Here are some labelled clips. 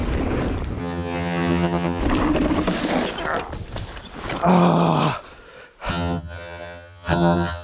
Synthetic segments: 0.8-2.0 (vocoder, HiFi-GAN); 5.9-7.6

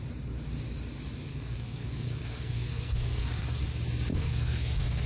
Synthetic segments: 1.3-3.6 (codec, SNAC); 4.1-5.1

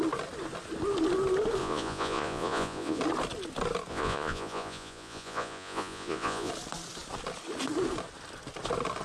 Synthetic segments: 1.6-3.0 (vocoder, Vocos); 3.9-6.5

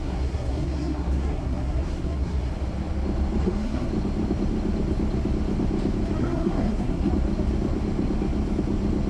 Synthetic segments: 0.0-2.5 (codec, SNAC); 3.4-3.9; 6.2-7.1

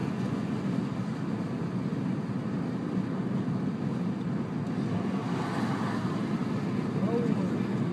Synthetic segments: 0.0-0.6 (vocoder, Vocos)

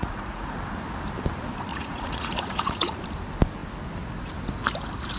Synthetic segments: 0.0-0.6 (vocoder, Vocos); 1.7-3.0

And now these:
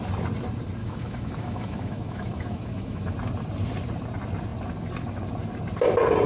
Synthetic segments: 0.8-3.1 (autoencoder, DAC-VAE)